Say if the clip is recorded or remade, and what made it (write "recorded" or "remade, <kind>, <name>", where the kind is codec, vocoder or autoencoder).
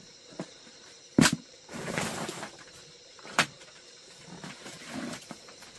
remade, vocoder, BigVGAN v2